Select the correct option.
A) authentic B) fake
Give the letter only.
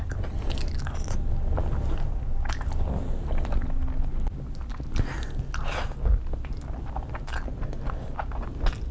A